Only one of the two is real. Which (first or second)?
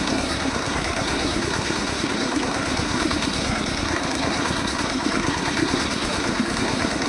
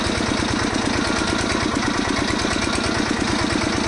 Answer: second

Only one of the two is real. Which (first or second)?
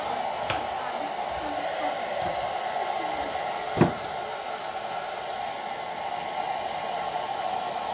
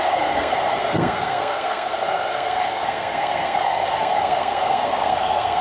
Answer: first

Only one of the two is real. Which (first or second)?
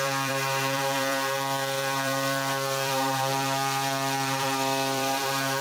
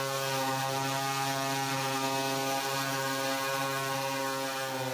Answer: second